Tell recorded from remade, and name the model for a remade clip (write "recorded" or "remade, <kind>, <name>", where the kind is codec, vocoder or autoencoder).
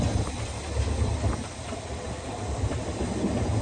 recorded